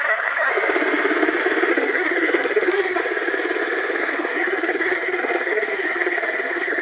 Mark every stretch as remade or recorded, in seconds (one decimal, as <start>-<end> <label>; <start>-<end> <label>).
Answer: 0.0-0.5 remade; 0.5-1.7 recorded; 1.7-3.0 remade; 3.0-4.0 recorded; 4.0-6.8 remade